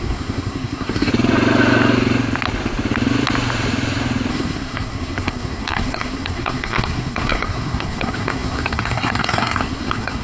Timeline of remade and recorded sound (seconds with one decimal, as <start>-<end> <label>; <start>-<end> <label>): 0.0-1.1 remade; 1.1-4.3 recorded; 4.3-10.2 remade